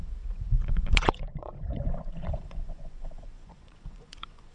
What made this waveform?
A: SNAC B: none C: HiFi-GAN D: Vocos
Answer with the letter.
D